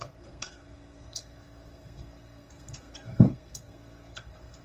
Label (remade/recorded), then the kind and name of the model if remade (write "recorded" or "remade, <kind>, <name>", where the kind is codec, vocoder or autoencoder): remade, codec, SNAC